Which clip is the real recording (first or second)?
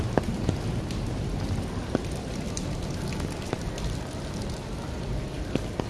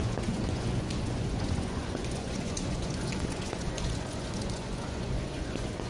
first